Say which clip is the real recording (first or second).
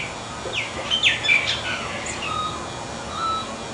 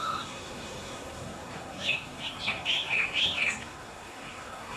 first